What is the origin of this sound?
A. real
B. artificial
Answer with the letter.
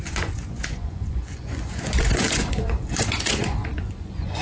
B